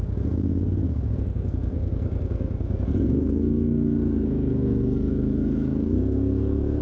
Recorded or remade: remade